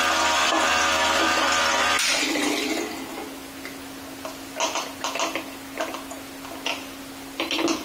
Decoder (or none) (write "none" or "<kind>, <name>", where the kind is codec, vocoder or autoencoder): none